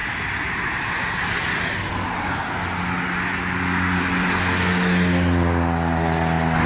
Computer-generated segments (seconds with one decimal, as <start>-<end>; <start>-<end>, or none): none